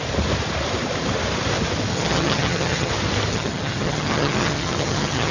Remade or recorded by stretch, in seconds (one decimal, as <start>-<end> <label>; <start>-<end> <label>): 0.0-1.9 recorded; 1.9-2.9 remade; 2.9-3.3 recorded; 3.3-5.3 remade